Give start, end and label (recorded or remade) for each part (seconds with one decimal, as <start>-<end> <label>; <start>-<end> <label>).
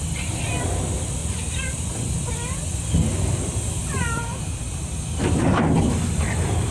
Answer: 0.0-6.7 recorded